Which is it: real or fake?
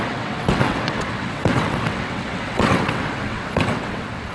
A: fake